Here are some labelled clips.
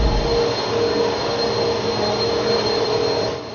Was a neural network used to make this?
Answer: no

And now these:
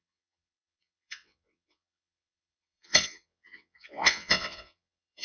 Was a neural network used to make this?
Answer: yes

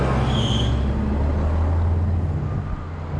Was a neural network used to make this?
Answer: no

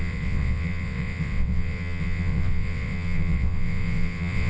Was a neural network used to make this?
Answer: yes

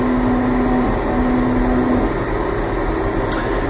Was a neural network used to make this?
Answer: no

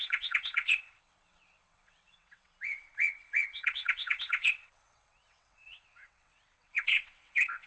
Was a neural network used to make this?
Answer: yes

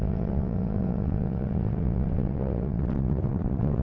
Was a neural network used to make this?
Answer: yes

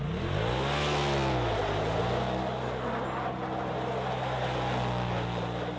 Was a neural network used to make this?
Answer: no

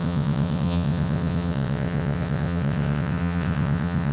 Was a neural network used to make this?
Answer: yes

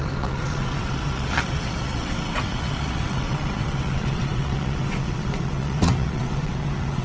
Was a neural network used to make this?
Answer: yes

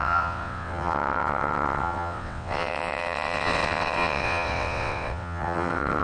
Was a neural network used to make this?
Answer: yes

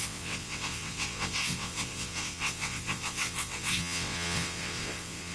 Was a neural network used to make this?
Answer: yes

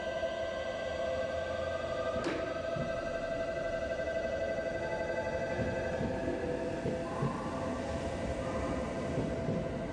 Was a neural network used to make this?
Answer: no